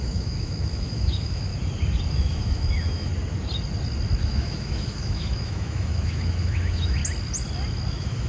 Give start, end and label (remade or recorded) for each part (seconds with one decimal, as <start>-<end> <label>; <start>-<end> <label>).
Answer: 0.0-1.5 remade; 1.5-2.1 recorded; 2.1-3.1 remade; 3.1-4.2 recorded; 4.2-7.0 remade; 7.0-7.9 recorded; 7.9-8.3 remade